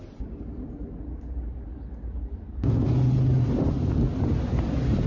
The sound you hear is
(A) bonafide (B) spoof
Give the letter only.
A